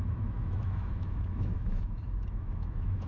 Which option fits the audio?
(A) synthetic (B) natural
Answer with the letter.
A